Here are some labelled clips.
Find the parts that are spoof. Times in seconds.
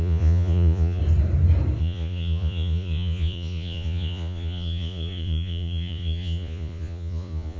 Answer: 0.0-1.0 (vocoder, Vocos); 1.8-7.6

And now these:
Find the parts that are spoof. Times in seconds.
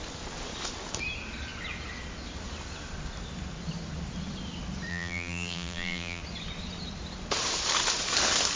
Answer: 4.9-6.2 (vocoder, BigVGAN v2)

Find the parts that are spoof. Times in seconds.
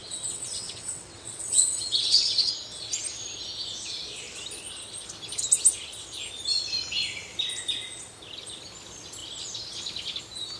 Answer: 0.0-2.5 (vocoder, WaveNeXt)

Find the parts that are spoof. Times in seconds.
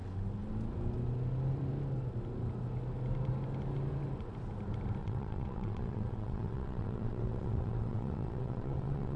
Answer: 5.0-9.2 (vocoder, WaveNeXt)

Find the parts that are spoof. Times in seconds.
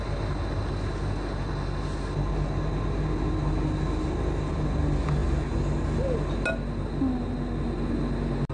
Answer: none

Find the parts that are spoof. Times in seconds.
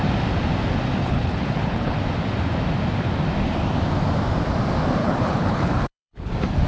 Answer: 1.0-2.0 (codec, HILCodec); 5.0-6.3